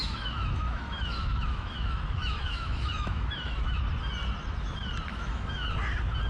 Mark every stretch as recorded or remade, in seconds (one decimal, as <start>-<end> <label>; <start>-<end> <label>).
0.0-3.8 remade; 3.8-5.1 recorded; 5.1-5.7 remade; 5.7-6.3 recorded